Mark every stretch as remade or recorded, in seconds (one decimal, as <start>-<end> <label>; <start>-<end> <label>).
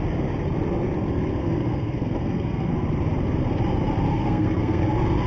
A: 0.0-1.4 recorded; 1.4-2.9 remade; 2.9-4.1 recorded; 4.1-4.8 remade; 4.8-5.3 recorded